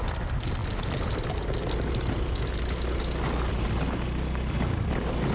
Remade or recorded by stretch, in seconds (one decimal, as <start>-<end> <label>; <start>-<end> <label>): 0.0-5.3 recorded